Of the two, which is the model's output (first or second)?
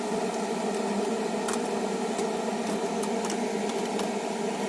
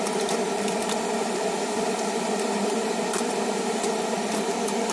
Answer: second